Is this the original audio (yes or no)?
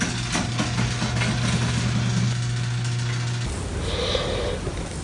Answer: yes